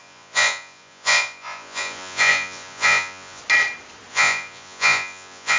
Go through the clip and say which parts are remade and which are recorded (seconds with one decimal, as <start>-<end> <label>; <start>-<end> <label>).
0.0-3.4 remade; 3.4-4.1 recorded; 4.1-5.6 remade